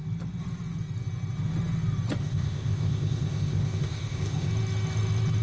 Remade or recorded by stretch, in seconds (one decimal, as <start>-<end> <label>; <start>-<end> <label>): 0.0-2.2 recorded; 2.2-4.5 remade; 4.5-5.4 recorded